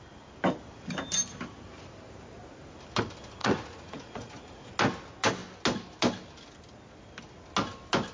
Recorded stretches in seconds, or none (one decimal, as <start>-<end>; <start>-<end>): 0.0-3.4; 4.7-8.1